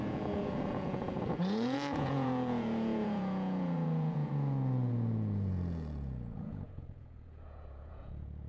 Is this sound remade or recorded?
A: remade